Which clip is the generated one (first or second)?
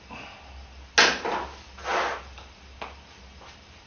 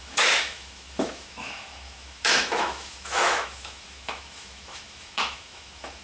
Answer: second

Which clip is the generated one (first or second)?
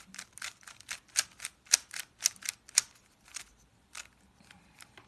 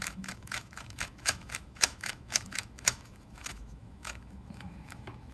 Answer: second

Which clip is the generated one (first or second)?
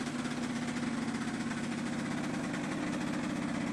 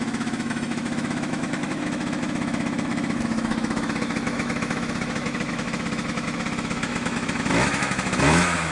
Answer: second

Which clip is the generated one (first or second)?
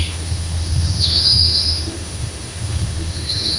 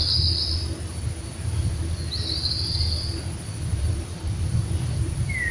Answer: first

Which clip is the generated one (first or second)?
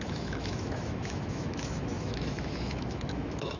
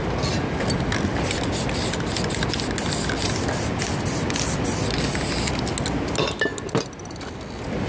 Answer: first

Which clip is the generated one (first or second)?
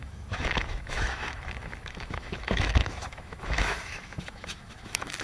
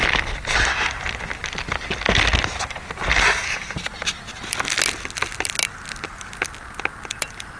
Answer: first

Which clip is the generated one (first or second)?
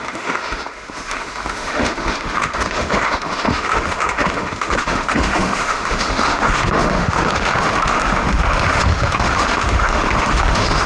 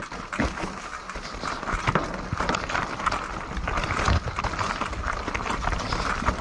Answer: first